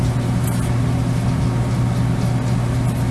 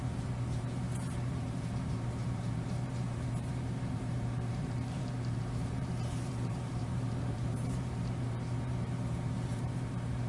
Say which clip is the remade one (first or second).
second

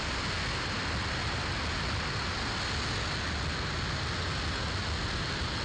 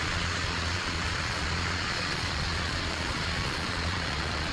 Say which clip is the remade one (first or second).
second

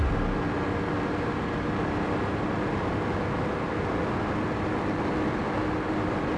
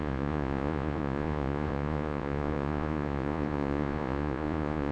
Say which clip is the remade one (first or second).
second